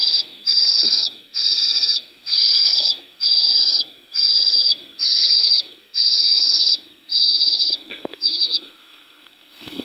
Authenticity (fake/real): fake